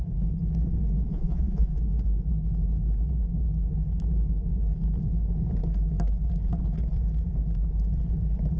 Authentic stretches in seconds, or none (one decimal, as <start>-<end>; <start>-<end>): 0.0-1.1; 1.8-8.6